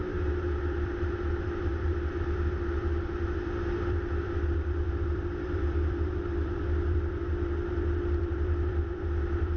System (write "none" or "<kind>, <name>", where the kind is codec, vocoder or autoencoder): vocoder, BigVGAN v2